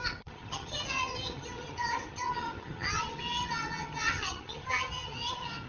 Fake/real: fake